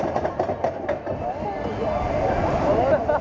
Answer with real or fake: real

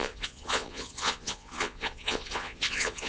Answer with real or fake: fake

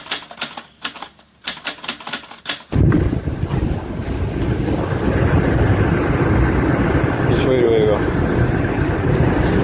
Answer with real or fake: real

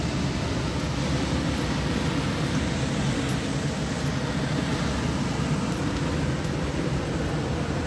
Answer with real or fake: real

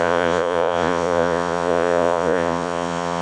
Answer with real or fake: fake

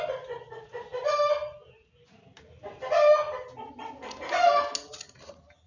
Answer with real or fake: real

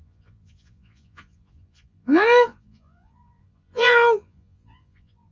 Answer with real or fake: fake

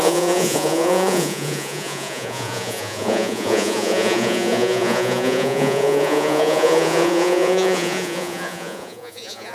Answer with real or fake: fake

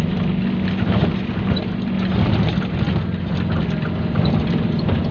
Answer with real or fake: real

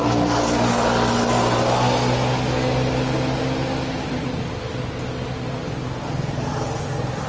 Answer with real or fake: real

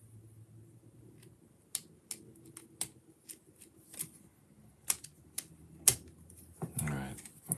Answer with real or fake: real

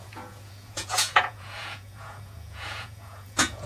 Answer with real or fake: fake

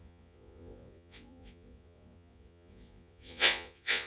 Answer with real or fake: fake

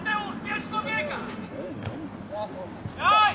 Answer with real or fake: real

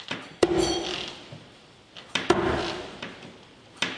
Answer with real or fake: real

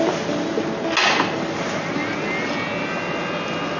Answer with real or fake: real